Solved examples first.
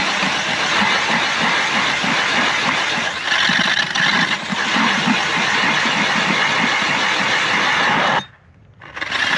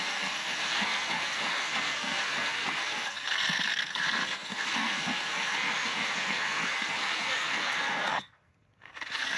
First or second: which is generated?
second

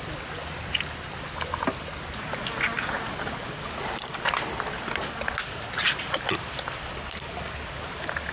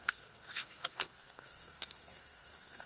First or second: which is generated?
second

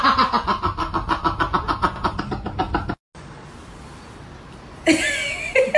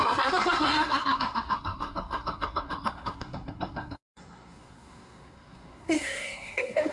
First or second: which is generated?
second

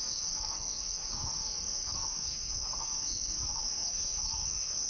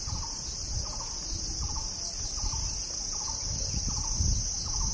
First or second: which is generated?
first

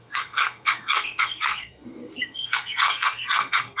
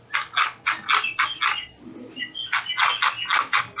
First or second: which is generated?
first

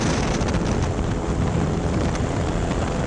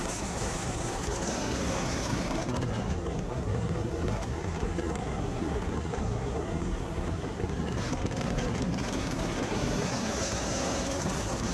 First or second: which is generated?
second